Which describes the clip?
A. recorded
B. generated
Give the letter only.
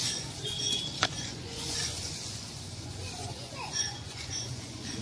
B